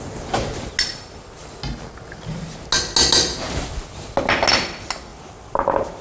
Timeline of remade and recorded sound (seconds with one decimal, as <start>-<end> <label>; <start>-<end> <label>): 0.0-6.0 recorded